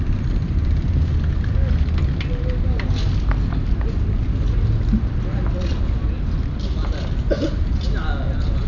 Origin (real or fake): real